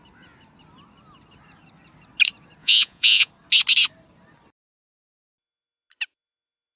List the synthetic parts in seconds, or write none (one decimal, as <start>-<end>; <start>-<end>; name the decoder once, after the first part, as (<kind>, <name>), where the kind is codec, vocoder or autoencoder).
2.6-3.3 (vocoder, Vocos)